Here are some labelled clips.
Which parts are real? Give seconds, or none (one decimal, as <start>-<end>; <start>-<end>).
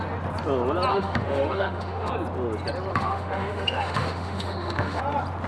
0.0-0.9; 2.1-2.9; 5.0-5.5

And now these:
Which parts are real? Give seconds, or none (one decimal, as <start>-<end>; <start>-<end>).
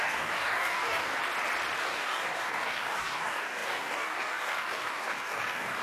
1.2-1.8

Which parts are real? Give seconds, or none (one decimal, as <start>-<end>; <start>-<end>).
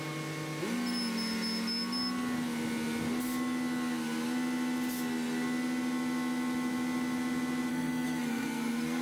0.0-7.7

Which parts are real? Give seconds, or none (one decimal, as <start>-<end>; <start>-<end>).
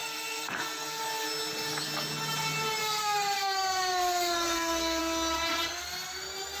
1.0-2.8; 5.0-6.6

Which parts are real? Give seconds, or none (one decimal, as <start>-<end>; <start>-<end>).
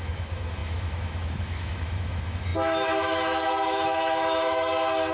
none